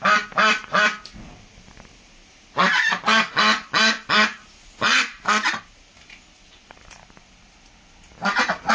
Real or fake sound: real